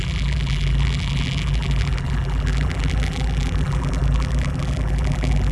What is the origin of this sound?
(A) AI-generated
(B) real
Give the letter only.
A